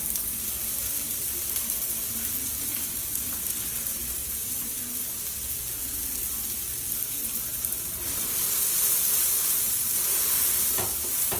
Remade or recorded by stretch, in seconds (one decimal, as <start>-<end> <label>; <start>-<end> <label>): 0.0-4.4 recorded; 4.4-5.0 remade; 5.0-7.5 recorded; 7.5-8.0 remade; 8.0-11.4 recorded

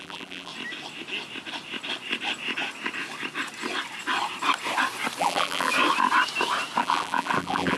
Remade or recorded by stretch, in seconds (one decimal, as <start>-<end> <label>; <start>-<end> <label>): 0.0-0.5 remade; 0.5-5.2 recorded; 5.2-5.7 remade; 5.7-6.8 recorded; 6.8-7.8 remade

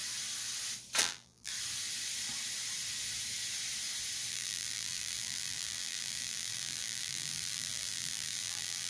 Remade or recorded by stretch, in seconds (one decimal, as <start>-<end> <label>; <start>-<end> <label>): 0.0-1.0 recorded; 1.0-1.5 remade; 1.5-4.3 recorded; 4.3-8.9 remade

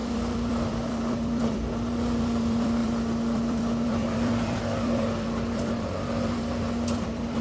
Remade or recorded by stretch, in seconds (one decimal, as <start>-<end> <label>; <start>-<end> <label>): 0.0-7.4 remade